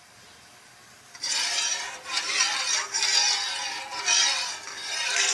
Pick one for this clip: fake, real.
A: real